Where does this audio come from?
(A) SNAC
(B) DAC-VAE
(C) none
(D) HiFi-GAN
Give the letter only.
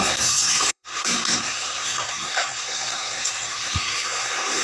A